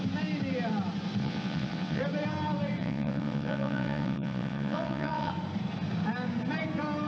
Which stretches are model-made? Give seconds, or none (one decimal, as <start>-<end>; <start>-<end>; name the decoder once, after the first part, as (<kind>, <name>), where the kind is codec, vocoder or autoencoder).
1.2-2.0 (vocoder, WaveNeXt); 2.8-5.3